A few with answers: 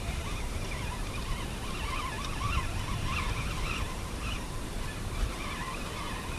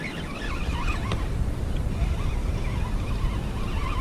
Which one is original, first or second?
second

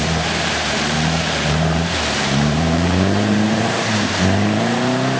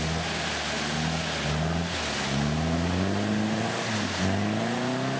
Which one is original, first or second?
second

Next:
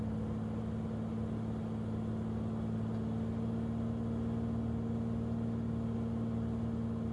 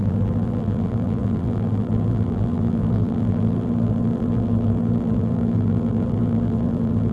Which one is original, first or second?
first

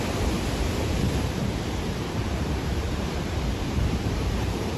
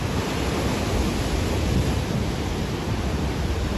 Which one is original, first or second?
second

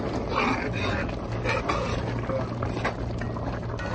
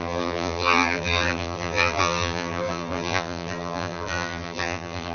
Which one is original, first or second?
first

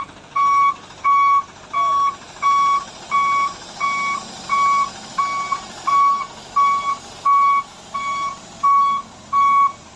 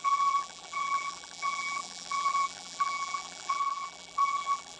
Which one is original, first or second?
first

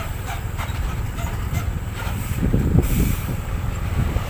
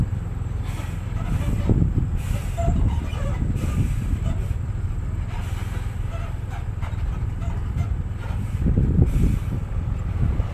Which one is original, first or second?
second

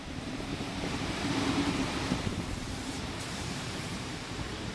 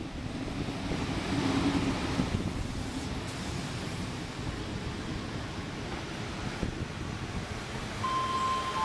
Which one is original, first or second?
second